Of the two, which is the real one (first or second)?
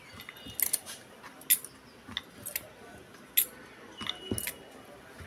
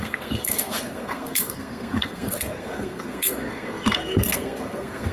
first